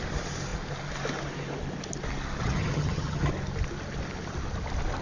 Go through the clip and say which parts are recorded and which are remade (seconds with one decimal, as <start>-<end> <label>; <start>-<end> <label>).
0.0-2.4 recorded; 2.4-3.3 remade; 3.3-5.0 recorded